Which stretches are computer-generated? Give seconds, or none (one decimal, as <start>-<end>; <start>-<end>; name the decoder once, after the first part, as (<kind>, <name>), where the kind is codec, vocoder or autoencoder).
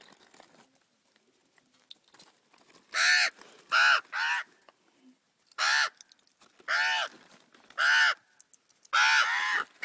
none